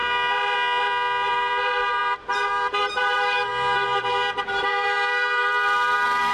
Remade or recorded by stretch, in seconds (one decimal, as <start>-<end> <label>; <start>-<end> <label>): 0.0-1.3 recorded; 1.3-3.5 remade; 3.5-4.6 recorded; 4.6-6.3 remade